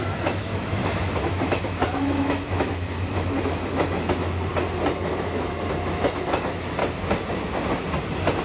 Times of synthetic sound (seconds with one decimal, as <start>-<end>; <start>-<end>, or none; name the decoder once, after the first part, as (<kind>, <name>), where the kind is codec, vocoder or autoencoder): 0.0-4.5 (autoencoder, DAC-VAE); 5.1-6.8

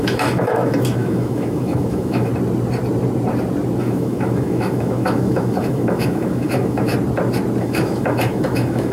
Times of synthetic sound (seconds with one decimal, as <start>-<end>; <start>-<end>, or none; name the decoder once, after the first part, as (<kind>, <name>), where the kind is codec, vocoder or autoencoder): 0.0-2.3 (autoencoder, DAC-VAE); 3.8-6.9; 7.6-8.9

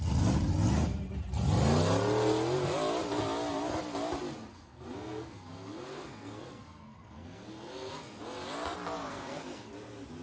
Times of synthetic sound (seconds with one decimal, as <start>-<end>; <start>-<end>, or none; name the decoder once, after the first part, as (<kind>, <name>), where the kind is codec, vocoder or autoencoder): 4.5-8.2 (codec, SNAC); 9.1-9.7

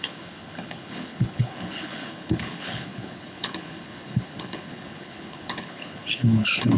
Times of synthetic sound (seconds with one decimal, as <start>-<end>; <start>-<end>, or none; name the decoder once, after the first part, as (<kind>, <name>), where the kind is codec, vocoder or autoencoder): 0.0-6.8 (codec, HILCodec)

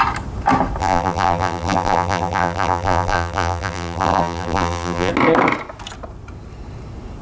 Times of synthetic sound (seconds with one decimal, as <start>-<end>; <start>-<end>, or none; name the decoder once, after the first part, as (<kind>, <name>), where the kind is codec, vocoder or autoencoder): 0.8-5.1 (vocoder, BigVGAN v2)

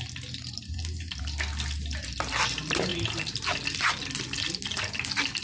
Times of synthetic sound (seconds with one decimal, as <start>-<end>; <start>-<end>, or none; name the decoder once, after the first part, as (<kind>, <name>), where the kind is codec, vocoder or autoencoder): none

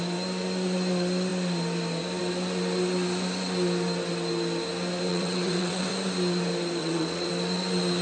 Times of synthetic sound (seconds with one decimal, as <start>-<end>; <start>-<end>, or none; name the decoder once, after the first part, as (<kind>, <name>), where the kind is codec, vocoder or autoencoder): 5.1-5.9 (vocoder, WaveNeXt); 6.8-7.3

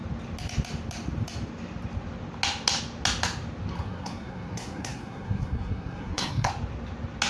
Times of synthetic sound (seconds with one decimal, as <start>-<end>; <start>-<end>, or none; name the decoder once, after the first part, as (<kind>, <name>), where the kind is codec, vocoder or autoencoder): 3.8-6.5 (codec, SNAC)